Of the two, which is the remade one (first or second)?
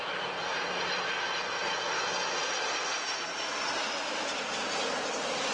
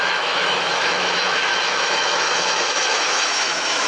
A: second